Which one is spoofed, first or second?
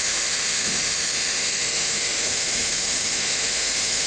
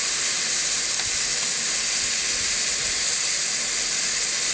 first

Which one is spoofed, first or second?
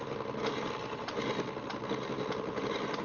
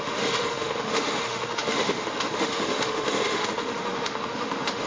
second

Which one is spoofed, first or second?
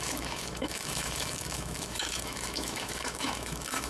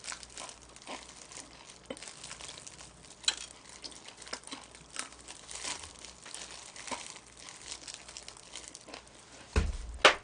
first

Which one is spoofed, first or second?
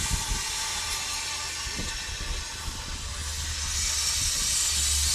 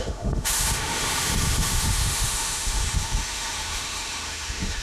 second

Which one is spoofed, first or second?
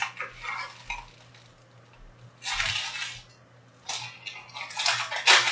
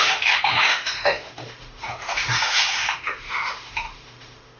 second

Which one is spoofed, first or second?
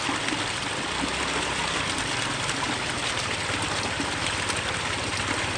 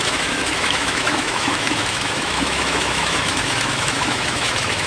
second